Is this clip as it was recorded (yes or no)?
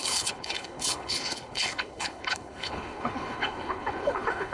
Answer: no